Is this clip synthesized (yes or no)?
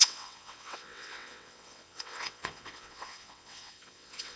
yes